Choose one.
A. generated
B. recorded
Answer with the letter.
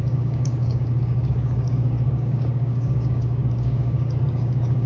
A